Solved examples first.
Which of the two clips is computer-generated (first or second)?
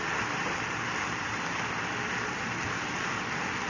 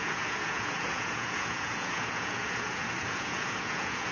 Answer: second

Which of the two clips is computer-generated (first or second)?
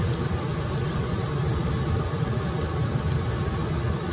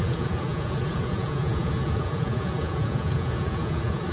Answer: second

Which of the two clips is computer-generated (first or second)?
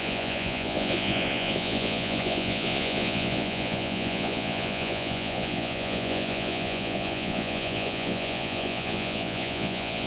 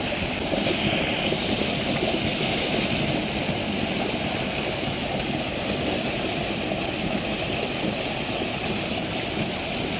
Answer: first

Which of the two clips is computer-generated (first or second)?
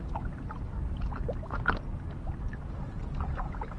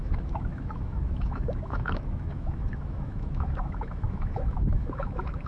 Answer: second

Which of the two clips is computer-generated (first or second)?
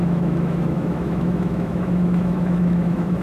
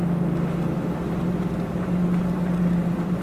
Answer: first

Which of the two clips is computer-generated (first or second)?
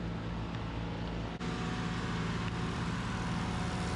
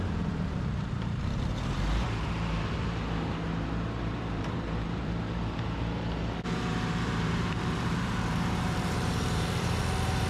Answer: second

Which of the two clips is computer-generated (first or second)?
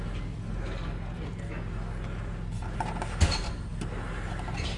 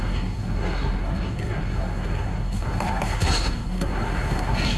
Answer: second